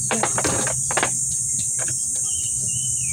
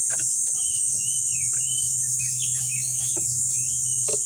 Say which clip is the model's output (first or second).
second